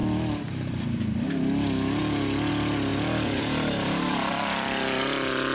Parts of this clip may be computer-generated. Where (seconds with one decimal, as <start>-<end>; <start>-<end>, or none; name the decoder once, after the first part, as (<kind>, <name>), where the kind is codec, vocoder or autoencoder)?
0.0-1.3 (vocoder, BigVGAN v2); 2.9-4.3